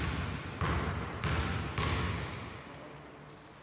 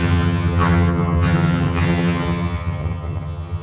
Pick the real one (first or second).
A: first